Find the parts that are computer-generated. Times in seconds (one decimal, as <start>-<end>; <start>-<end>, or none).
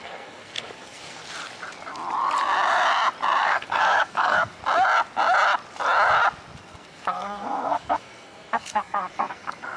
0.0-1.2; 3.4-4.6; 6.6-9.8